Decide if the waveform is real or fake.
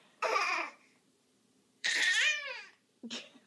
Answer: fake